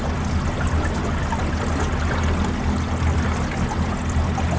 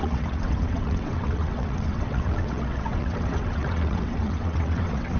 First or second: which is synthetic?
second